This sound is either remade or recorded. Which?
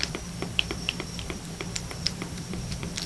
remade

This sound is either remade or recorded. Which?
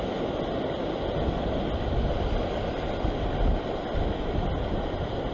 recorded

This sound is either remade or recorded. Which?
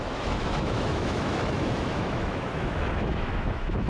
remade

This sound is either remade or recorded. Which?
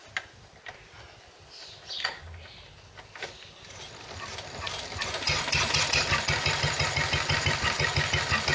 recorded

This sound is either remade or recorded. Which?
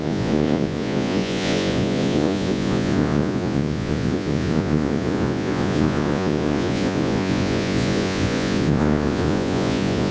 remade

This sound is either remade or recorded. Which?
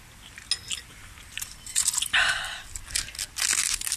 recorded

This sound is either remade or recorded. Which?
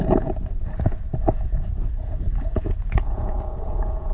remade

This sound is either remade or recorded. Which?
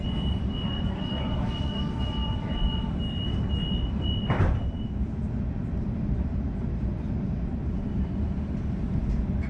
remade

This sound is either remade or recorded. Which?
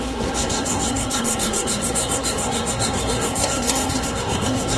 remade